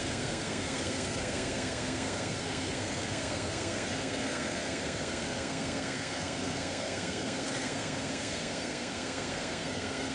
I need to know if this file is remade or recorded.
remade